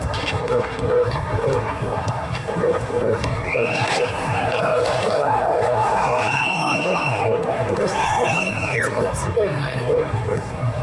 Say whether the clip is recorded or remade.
remade